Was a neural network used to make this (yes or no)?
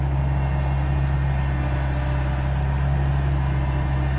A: no